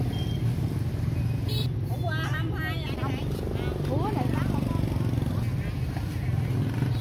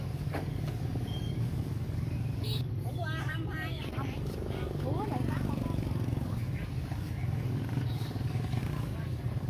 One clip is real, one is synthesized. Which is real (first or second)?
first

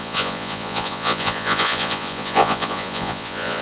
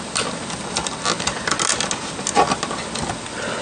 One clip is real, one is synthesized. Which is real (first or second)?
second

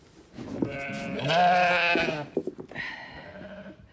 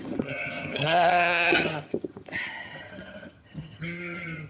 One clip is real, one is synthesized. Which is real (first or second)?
first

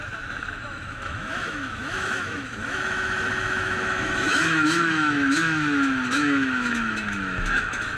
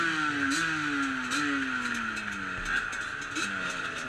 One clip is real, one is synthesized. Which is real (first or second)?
second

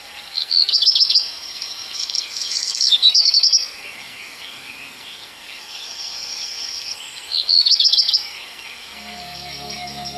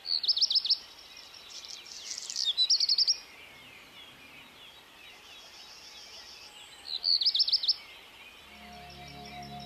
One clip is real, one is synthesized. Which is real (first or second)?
second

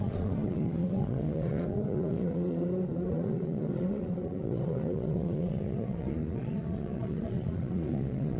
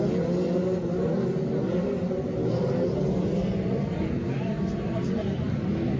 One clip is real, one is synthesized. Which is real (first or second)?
second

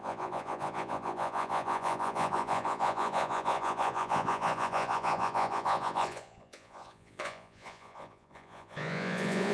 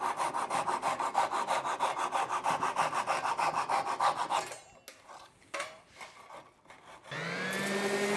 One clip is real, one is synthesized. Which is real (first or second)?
second